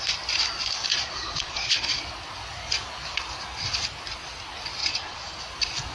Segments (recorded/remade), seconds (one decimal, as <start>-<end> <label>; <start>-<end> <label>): 0.0-0.9 recorded; 0.9-2.0 remade; 2.0-4.8 recorded; 4.8-5.4 remade; 5.4-5.9 recorded